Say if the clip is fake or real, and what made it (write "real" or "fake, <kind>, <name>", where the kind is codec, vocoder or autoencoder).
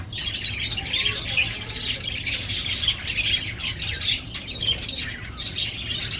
real